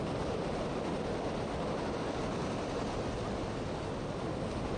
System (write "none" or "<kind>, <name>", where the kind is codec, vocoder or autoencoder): none